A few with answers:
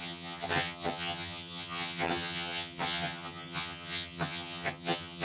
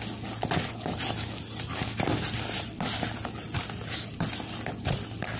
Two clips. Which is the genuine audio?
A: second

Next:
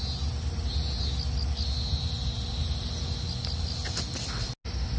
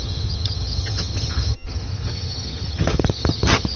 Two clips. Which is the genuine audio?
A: first